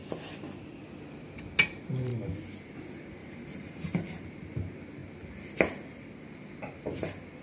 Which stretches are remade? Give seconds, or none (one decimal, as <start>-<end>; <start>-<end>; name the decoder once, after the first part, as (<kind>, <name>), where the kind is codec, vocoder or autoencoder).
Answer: 3.2-4.2 (vocoder, BigVGAN v2)

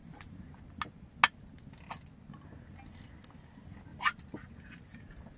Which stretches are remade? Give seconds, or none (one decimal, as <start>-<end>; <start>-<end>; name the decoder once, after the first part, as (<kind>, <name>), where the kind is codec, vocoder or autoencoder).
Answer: 3.9-5.0 (vocoder, BigVGAN v2)

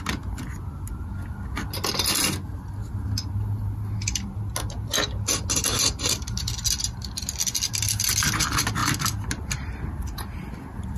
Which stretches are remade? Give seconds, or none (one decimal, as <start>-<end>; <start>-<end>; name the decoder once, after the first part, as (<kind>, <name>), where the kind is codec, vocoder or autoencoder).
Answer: 8.8-9.9 (vocoder, BigVGAN v2)

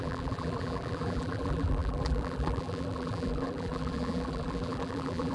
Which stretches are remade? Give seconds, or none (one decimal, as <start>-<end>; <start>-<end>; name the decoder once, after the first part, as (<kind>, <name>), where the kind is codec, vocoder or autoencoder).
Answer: 0.0-5.3 (vocoder, BigVGAN v2)

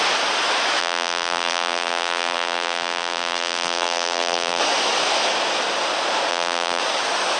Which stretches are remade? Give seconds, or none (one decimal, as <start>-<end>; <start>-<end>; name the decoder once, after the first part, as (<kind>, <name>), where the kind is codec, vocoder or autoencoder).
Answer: 0.8-4.6 (vocoder, BigVGAN v2); 6.3-6.8

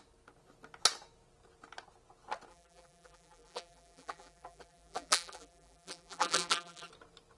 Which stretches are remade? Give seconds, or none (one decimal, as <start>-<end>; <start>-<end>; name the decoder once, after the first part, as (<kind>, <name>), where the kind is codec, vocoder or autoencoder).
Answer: 2.5-6.9 (vocoder, BigVGAN v2)

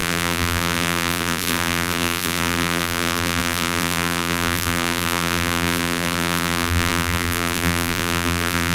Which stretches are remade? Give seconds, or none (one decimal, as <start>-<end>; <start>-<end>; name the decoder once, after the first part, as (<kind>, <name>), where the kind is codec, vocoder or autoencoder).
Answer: 0.0-8.7 (vocoder, BigVGAN v2)

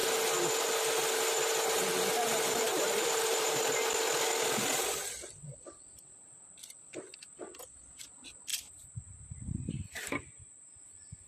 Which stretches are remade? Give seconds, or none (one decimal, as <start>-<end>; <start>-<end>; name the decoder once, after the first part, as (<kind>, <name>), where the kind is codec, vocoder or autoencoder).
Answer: 2.7-3.6 (vocoder, BigVGAN v2); 8.5-10.0